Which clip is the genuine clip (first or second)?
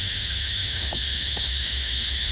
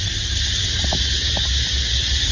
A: second